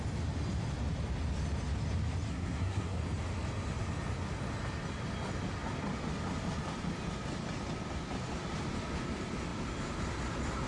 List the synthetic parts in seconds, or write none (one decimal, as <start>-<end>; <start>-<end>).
2.3-3.0